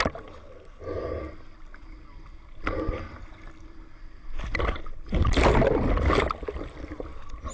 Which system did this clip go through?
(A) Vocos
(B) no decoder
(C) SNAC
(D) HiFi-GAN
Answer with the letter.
B